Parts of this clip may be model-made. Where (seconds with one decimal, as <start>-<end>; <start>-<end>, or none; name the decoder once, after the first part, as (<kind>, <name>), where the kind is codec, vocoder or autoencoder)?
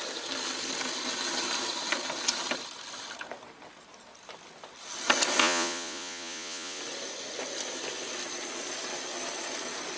5.4-6.8 (vocoder, Vocos)